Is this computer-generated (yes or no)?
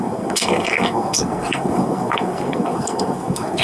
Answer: yes